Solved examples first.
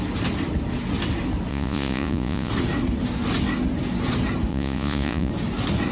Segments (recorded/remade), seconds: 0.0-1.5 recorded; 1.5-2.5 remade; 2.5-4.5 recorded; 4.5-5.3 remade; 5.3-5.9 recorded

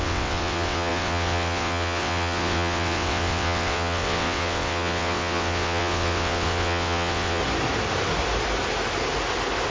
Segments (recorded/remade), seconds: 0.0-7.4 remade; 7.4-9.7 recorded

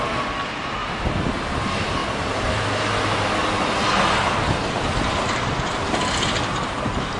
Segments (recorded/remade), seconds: 0.0-0.8 recorded; 0.8-1.5 remade; 1.5-7.2 recorded